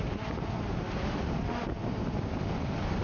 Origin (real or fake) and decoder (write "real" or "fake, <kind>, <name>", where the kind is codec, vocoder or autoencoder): real